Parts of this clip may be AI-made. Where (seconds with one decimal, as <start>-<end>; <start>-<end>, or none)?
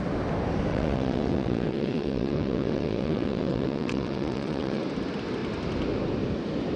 0.7-4.8